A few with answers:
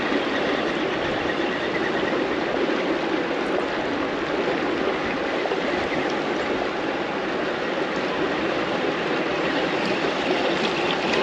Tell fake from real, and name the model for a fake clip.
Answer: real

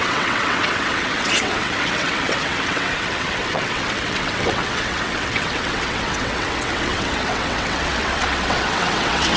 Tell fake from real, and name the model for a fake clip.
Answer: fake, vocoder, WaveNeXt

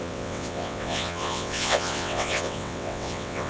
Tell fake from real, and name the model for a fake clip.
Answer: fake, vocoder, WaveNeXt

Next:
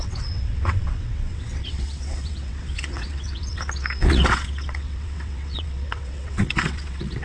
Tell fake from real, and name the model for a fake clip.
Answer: fake, vocoder, WaveNeXt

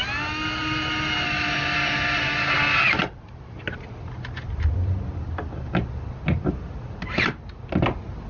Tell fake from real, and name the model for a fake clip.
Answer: real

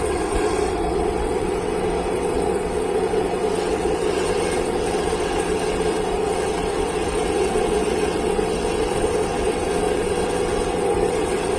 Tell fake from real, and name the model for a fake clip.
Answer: fake, vocoder, WaveNeXt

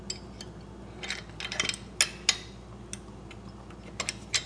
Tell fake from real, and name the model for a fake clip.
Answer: real